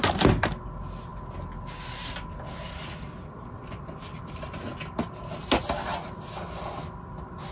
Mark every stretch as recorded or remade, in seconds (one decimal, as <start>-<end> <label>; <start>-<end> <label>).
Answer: 0.0-7.5 recorded